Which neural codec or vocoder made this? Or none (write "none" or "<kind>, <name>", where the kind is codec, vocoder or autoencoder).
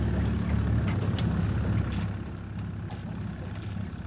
none